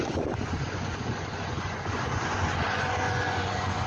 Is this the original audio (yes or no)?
no